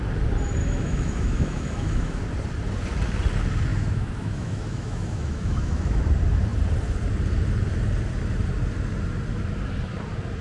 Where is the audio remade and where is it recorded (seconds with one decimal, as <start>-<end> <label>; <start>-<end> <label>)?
0.0-0.6 recorded; 0.6-2.2 remade; 2.2-3.7 recorded; 3.7-6.0 remade; 6.0-10.4 recorded